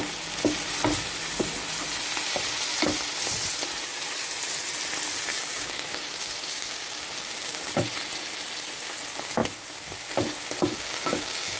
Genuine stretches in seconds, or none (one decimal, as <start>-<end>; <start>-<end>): 0.0-5.3; 7.7-10.7